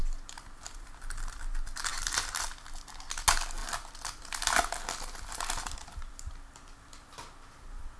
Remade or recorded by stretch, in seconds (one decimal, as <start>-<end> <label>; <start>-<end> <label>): 0.0-8.0 recorded